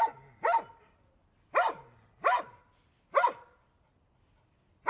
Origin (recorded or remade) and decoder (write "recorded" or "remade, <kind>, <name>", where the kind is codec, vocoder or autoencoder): recorded